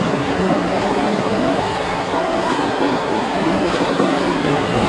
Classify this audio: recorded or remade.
remade